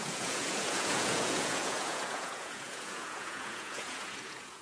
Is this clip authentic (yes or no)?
no